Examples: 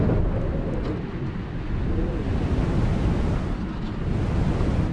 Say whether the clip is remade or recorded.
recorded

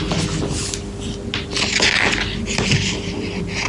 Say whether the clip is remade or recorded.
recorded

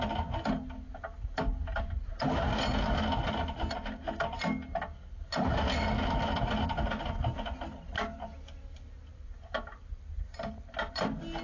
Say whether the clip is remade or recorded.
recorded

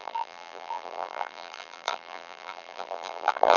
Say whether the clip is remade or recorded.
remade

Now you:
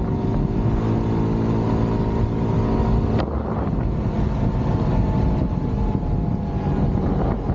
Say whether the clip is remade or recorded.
recorded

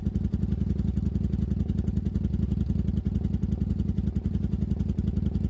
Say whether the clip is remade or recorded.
recorded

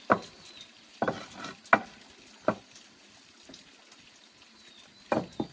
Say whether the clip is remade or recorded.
recorded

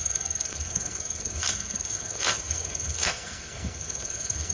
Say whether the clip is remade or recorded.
remade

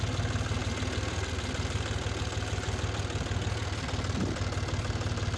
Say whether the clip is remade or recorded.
recorded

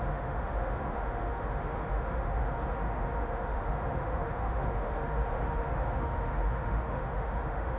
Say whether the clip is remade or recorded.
remade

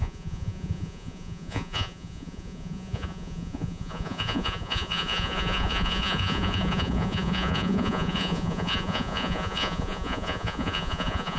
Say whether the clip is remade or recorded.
remade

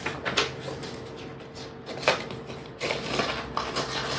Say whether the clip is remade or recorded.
recorded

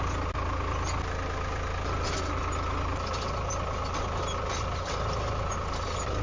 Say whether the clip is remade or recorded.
recorded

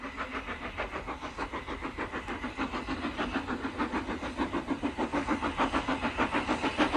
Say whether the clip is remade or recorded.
recorded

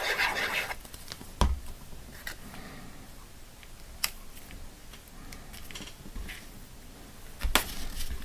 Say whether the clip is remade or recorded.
recorded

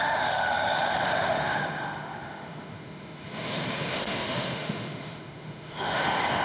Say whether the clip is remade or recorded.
remade